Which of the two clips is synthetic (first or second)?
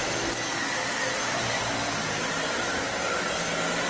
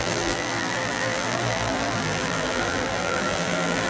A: second